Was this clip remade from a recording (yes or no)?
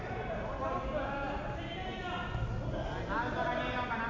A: no